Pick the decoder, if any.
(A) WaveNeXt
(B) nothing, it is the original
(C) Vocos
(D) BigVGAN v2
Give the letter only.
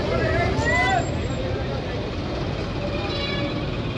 B